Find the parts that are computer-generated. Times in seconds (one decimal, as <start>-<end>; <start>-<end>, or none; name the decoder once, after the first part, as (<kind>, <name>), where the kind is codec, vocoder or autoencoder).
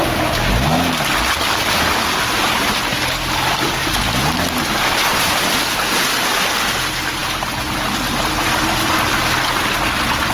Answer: 3.8-5.2 (vocoder, BigVGAN v2)